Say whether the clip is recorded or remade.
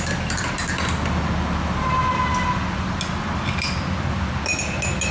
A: recorded